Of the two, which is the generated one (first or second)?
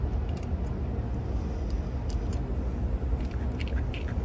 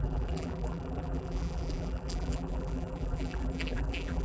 second